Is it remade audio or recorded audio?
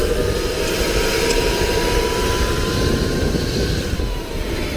recorded